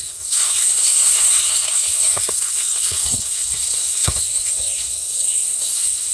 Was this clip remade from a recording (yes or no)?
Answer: yes